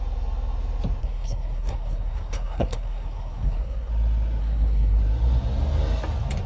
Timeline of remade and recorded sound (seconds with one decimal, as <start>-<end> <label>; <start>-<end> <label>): 0.0-1.0 recorded; 1.0-3.9 remade; 3.9-4.4 recorded; 4.4-5.0 remade; 5.0-6.5 recorded